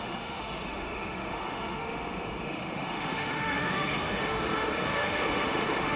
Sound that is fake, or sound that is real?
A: fake